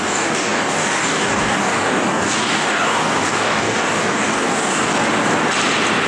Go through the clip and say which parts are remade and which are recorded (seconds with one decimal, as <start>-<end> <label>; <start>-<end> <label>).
0.0-4.9 remade; 4.9-6.1 recorded